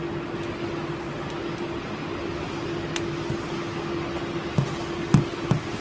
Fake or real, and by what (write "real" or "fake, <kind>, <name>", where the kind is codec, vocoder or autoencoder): real